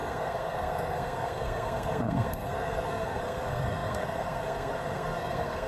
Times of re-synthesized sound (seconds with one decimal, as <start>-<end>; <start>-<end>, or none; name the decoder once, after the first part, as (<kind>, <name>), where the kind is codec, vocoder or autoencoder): 0.0-5.7 (codec, SNAC)